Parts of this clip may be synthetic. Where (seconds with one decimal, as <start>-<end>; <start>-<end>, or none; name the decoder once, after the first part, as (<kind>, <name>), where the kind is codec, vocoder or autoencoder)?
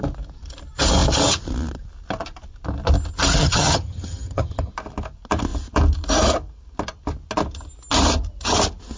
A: 3.4-4.7 (vocoder, HiFi-GAN)